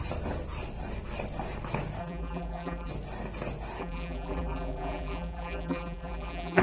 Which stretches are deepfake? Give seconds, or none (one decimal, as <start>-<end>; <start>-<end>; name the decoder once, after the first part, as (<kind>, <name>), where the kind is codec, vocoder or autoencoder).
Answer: 2.0-2.9 (vocoder, BigVGAN v2); 3.8-6.6